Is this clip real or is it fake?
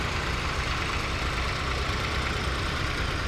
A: real